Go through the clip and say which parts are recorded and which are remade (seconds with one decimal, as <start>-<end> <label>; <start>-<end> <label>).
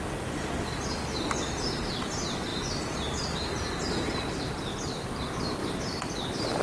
0.0-6.6 recorded